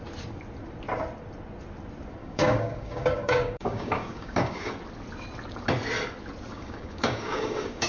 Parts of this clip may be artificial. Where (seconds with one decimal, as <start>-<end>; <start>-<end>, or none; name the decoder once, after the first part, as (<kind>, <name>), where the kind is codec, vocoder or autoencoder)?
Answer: 2.2-4.7 (codec, DAC); 6.5-7.9